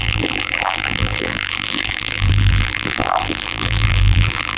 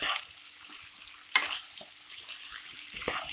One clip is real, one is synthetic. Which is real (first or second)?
second